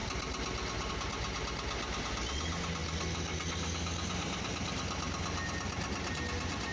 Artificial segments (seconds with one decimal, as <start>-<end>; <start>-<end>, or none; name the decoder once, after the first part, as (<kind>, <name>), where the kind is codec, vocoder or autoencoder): none